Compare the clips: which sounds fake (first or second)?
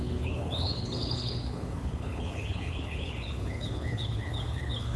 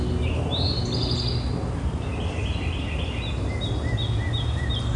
first